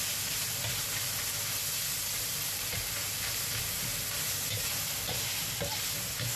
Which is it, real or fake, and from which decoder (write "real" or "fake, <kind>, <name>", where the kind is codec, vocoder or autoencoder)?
real